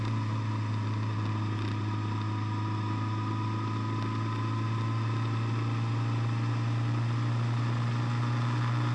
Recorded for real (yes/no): yes